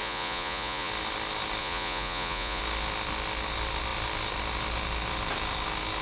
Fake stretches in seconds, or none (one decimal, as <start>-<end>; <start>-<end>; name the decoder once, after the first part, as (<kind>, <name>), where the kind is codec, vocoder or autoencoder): 0.0-0.9 (vocoder, Vocos); 1.6-2.6